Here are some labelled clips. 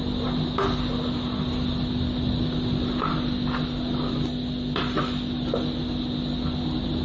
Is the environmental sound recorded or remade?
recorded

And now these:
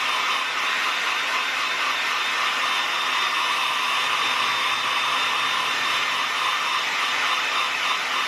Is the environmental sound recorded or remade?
recorded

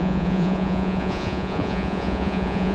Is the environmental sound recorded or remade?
remade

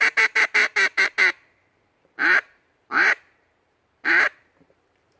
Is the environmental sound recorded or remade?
remade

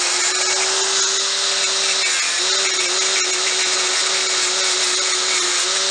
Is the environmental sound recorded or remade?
recorded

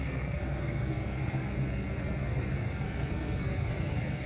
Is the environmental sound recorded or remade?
remade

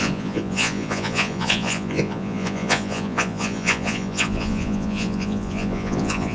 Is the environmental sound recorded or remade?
remade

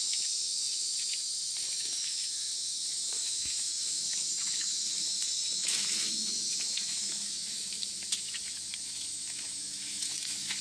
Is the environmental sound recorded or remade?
remade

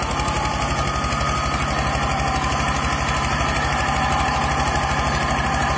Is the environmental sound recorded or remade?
recorded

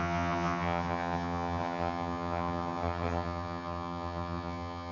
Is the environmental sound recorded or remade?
remade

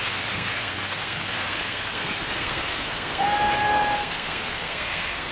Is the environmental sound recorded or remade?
remade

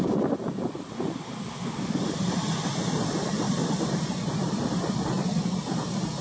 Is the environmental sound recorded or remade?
remade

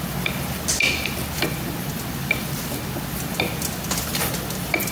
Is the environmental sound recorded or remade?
recorded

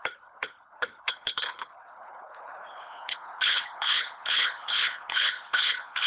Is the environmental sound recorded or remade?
remade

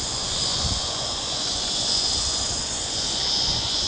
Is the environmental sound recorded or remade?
remade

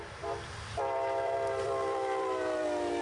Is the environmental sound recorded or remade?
remade